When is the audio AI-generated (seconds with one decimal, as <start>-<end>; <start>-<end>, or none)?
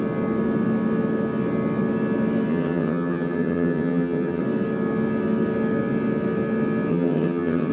2.5-4.4; 6.9-7.7